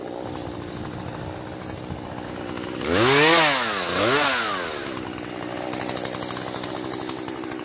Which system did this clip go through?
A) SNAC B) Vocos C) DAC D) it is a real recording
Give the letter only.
D